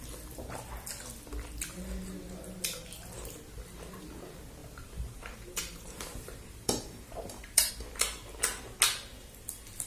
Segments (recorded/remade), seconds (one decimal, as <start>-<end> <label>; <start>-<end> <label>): 0.0-4.6 recorded; 4.6-7.7 remade; 7.7-9.9 recorded